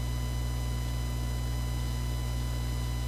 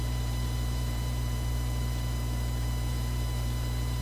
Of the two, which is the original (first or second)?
first